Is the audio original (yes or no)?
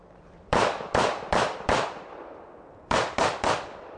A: no